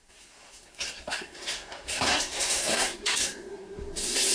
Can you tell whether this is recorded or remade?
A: remade